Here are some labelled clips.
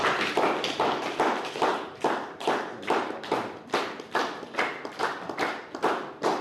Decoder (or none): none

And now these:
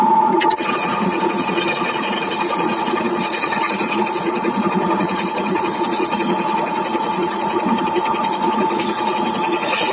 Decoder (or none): vocoder, Vocos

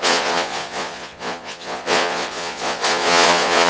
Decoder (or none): vocoder, Vocos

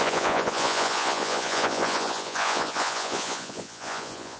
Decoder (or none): vocoder, Vocos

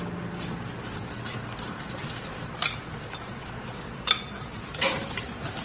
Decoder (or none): none